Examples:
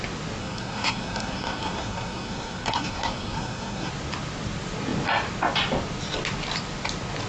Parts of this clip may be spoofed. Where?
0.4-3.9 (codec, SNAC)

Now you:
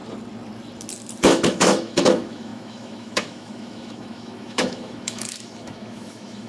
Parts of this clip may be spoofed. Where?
1.2-6.5 (autoencoder, DAC-VAE)

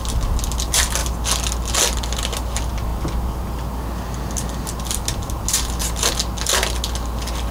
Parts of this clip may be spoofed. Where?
none

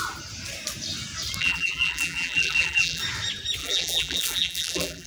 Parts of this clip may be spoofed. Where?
1.4-3.0 (vocoder, BigVGAN v2); 3.6-5.1

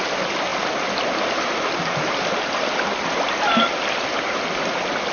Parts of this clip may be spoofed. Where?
0.5-3.6 (vocoder, BigVGAN v2)

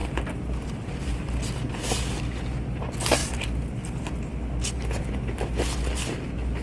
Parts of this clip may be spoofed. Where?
0.0-1.2 (vocoder, BigVGAN v2); 3.2-3.9